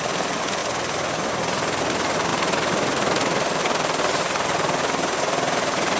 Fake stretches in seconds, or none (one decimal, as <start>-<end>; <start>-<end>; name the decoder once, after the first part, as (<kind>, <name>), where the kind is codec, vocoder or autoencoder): none